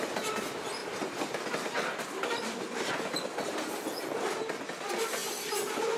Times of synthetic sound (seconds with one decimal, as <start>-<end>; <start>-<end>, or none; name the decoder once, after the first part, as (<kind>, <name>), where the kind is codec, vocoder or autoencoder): 5.2-6.0 (vocoder, BigVGAN v2)